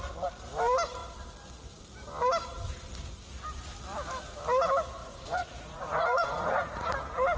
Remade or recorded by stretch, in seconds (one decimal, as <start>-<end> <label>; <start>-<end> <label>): 0.0-5.0 recorded; 5.0-6.9 remade; 6.9-7.4 recorded